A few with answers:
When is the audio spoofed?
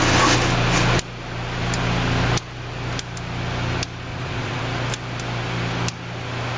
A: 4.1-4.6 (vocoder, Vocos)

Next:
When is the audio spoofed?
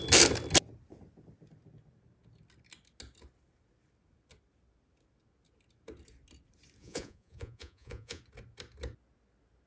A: 6.8-8.2 (vocoder, Vocos)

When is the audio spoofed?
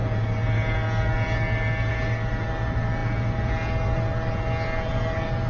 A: none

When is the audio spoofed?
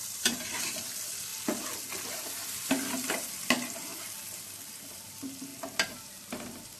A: 0.0-1.3 (vocoder, BigVGAN v2); 2.0-3.9; 4.6-5.5; 6.0-6.8